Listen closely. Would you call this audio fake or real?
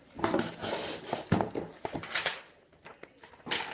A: real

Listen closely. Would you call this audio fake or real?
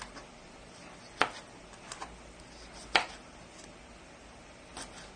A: real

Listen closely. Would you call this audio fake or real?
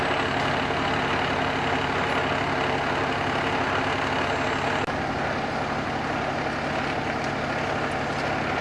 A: real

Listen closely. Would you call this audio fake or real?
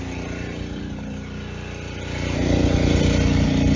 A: real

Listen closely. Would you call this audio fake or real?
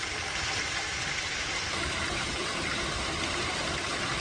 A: real